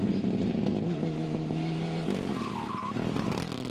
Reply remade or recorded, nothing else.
recorded